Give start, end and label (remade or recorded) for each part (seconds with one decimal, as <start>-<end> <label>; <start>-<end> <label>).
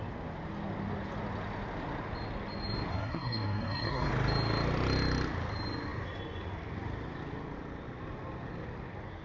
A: 0.0-2.9 recorded; 2.9-4.1 remade; 4.1-9.2 recorded